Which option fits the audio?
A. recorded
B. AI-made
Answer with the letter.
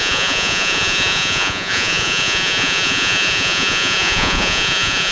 B